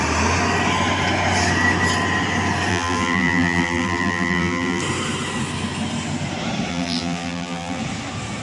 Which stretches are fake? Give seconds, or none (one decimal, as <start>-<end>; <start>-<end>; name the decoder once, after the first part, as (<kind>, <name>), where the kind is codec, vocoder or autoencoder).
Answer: 2.7-4.8 (vocoder, BigVGAN v2); 6.7-7.8